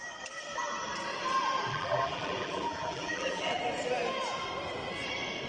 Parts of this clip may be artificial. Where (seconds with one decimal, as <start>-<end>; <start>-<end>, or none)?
1.7-3.6